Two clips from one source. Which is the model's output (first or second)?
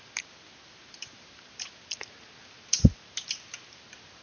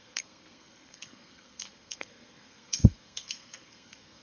second